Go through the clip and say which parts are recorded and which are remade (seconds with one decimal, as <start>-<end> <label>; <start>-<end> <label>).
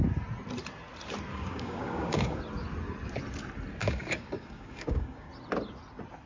0.0-1.3 recorded; 1.3-2.4 remade; 2.4-3.8 recorded; 3.8-5.3 remade; 5.3-6.3 recorded